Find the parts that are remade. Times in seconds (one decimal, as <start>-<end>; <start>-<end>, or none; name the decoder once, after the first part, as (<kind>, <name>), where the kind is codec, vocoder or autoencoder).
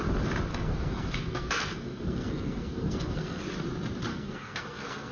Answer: 0.5-3.4 (codec, SNAC); 4.1-5.1